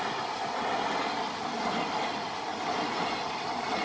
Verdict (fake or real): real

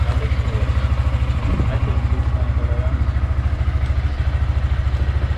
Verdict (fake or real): real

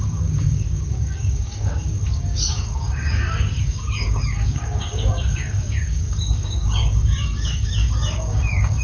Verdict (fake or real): fake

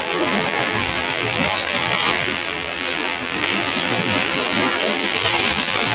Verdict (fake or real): fake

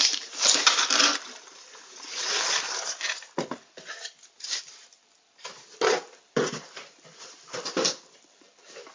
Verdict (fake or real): real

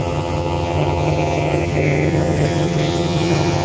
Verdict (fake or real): fake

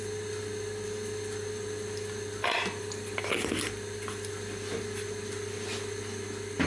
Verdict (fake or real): real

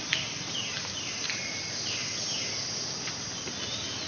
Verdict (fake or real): real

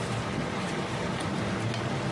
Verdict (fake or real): real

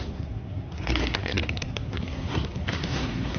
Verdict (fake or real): fake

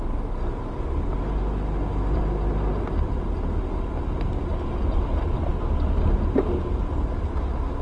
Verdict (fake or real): real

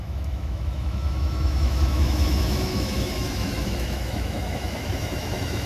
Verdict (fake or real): fake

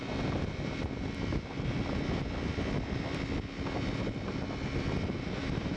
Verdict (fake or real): real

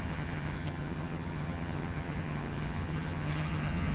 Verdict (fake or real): fake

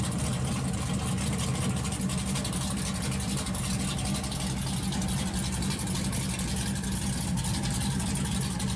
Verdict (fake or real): real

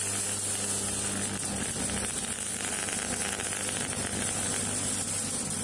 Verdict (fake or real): real